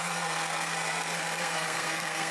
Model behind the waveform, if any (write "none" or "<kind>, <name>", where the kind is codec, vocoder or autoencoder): codec, SNAC